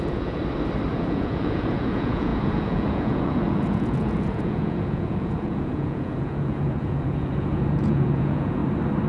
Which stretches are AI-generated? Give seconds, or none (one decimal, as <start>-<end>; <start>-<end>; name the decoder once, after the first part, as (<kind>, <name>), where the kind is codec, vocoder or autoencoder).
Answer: 0.0-0.4 (vocoder, Vocos); 0.9-8.6